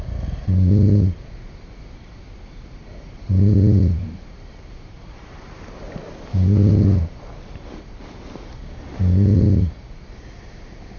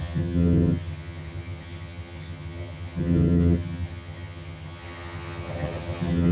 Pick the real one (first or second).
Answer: first